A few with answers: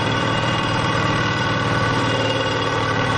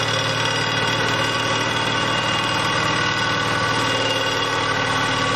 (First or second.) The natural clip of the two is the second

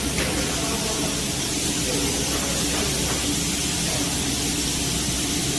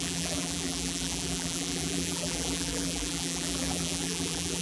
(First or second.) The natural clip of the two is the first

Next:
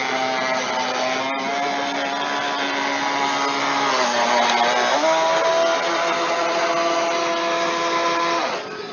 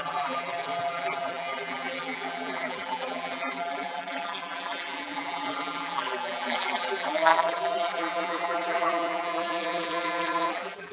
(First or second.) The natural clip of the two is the first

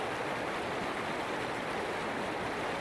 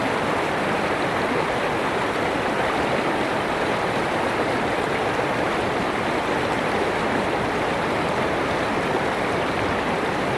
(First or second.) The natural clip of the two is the first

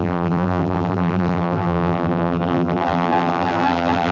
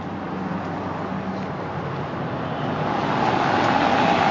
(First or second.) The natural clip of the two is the second